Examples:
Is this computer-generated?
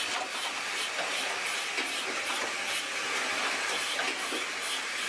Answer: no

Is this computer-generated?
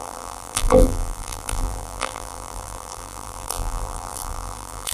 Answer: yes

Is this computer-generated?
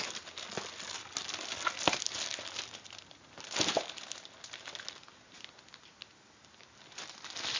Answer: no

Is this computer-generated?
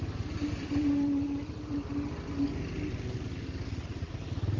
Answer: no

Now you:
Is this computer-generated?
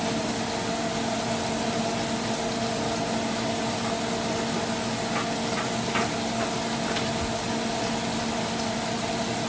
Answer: no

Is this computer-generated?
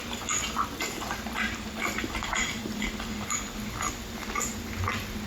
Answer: no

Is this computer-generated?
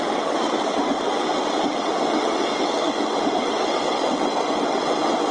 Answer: yes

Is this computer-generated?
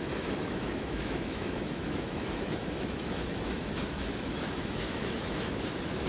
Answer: yes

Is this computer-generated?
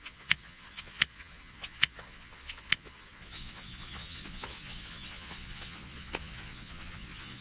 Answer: yes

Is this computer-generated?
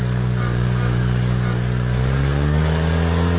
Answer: yes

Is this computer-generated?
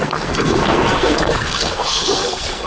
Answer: yes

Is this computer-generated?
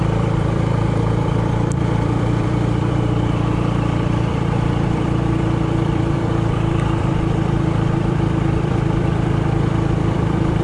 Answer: yes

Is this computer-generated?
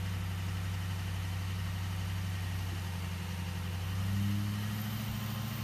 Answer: no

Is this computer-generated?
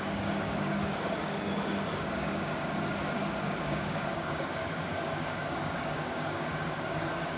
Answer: yes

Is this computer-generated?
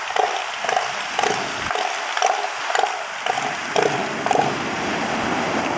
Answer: no